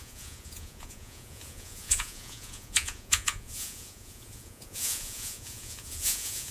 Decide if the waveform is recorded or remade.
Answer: remade